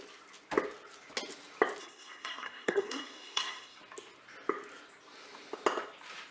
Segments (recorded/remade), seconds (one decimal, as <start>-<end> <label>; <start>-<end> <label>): 0.0-1.8 recorded; 1.8-3.8 remade; 3.8-6.3 recorded